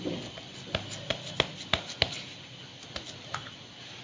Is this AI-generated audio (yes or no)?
no